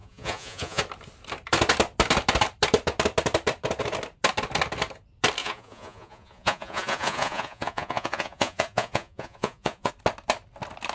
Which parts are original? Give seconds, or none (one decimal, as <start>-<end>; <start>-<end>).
0.8-5.4; 9.9-10.9